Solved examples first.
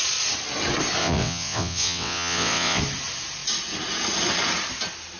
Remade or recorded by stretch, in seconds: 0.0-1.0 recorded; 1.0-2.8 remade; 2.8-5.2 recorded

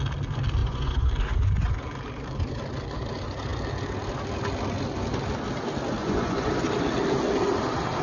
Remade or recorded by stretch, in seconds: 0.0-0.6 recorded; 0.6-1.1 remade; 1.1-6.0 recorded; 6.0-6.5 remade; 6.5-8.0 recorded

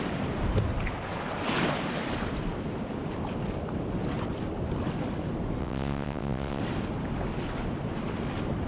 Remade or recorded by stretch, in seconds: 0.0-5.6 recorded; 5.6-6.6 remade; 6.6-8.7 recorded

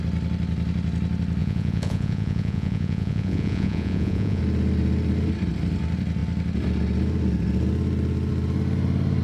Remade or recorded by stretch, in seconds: 0.0-1.4 recorded; 1.4-4.4 remade; 4.4-9.2 recorded